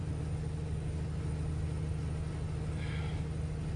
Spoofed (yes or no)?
no